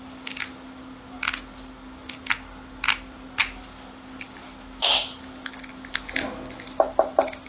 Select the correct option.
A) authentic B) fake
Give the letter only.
A